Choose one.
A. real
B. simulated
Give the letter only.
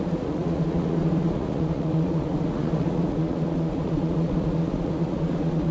B